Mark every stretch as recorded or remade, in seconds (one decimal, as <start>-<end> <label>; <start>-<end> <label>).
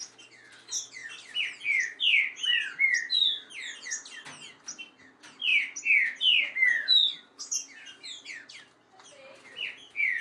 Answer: 0.0-10.2 recorded